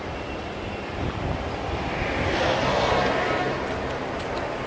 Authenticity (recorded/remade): recorded